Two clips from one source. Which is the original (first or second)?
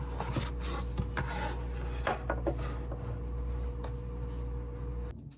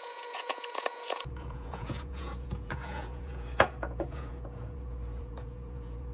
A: first